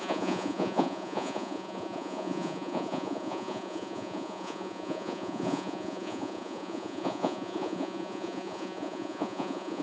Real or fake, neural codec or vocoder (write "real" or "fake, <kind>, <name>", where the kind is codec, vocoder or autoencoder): fake, vocoder, Vocos